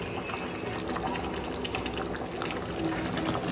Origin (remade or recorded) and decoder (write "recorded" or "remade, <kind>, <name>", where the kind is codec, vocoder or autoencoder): recorded